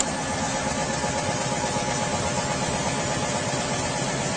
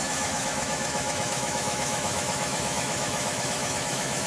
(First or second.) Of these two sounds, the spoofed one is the second